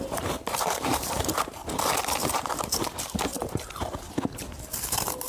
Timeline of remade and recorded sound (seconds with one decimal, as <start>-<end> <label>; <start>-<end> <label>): 0.0-1.6 remade; 1.6-2.2 recorded; 2.2-3.3 remade; 3.3-4.8 recorded; 4.8-5.3 remade